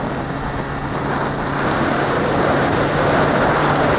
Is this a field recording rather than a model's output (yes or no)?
yes